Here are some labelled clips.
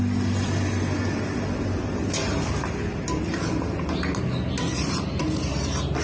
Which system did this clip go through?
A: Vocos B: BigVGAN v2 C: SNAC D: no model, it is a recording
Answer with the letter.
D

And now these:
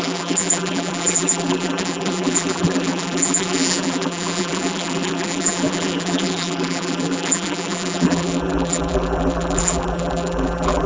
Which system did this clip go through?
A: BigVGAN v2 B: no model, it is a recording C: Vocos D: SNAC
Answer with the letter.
A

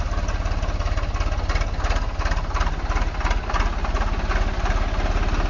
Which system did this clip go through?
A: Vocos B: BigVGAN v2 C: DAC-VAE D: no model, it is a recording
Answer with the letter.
D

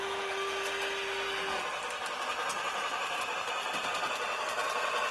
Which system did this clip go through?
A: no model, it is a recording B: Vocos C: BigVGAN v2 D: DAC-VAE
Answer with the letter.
A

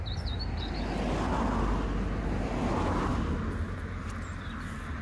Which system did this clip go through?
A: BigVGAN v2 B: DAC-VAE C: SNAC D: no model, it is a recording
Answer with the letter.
D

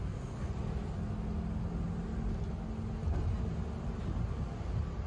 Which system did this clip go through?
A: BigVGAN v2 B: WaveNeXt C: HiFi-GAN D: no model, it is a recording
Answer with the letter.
D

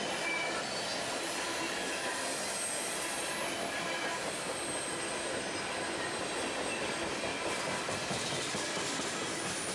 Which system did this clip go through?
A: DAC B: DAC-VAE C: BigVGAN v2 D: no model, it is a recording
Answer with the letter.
D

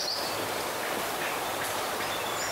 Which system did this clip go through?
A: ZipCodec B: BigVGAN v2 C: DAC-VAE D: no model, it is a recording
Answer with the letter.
D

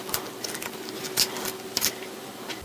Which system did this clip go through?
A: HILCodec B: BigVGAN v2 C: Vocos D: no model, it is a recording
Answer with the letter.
D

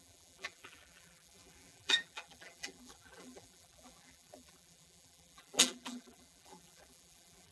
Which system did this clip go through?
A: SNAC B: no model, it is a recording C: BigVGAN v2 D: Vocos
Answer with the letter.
C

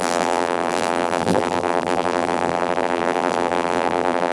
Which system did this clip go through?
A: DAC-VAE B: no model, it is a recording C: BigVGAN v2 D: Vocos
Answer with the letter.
C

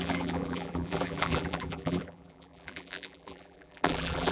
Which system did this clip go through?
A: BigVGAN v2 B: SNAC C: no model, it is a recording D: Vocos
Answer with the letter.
A